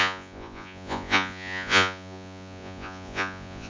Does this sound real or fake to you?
fake